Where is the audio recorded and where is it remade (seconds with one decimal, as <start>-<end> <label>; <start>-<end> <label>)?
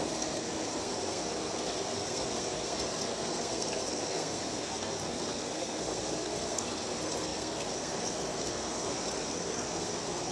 0.0-10.3 remade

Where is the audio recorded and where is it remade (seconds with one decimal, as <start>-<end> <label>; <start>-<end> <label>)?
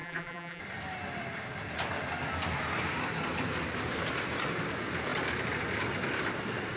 0.0-0.6 remade; 0.6-6.8 recorded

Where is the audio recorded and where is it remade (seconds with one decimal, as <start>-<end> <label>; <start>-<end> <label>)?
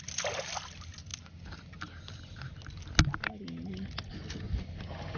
0.0-5.2 recorded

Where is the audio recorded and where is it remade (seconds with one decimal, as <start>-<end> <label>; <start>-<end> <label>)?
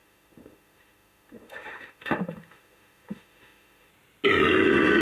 0.0-3.9 remade; 3.9-5.0 recorded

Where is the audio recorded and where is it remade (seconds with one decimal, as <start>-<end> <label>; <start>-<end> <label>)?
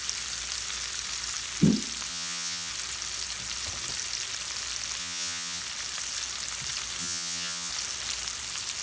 0.0-2.1 recorded; 2.1-2.7 remade; 2.7-5.0 recorded; 5.0-5.6 remade; 5.6-7.0 recorded; 7.0-7.7 remade; 7.7-8.8 recorded